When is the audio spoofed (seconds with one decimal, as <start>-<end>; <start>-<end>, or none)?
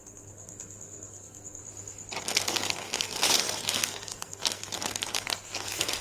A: 0.0-1.6; 2.2-6.0